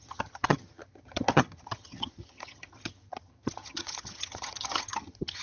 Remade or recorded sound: remade